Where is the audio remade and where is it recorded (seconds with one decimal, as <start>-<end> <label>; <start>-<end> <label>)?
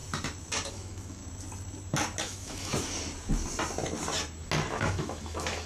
0.0-0.7 recorded; 0.7-1.2 remade; 1.2-2.2 recorded; 2.2-2.7 remade; 2.7-4.7 recorded; 4.7-5.7 remade